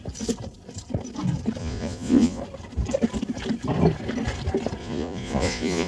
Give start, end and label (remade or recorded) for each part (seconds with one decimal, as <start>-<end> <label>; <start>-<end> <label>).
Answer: 0.0-1.6 recorded; 1.6-2.4 remade; 2.4-4.8 recorded; 4.8-5.9 remade